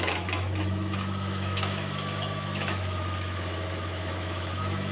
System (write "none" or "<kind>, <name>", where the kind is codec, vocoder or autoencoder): autoencoder, DAC-VAE